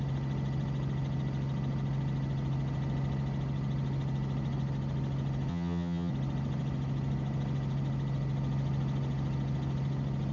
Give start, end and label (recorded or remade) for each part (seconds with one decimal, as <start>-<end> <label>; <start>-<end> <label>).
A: 0.0-5.5 recorded; 5.5-6.1 remade; 6.1-10.3 recorded

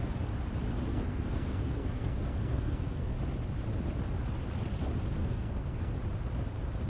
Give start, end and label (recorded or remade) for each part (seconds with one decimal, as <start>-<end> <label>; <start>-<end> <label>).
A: 0.0-0.9 recorded; 0.9-3.2 remade; 3.2-5.2 recorded; 5.2-5.9 remade; 5.9-6.9 recorded

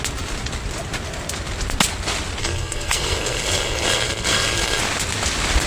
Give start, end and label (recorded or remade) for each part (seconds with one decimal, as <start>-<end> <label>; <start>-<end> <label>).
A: 0.0-2.4 recorded; 2.4-4.8 remade; 4.8-5.7 recorded

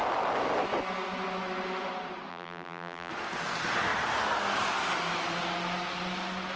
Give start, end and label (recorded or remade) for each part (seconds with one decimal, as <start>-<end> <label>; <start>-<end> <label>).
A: 0.0-2.3 recorded; 2.3-3.1 remade; 3.1-6.6 recorded

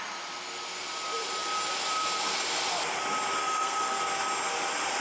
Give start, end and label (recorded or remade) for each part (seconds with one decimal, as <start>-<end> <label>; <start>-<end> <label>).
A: 0.0-3.4 recorded; 3.4-4.0 remade; 4.0-5.0 recorded

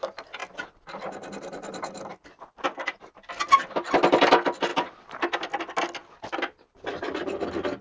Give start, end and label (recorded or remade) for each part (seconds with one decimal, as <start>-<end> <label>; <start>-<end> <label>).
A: 0.0-4.7 recorded; 4.7-5.6 remade; 5.6-7.8 recorded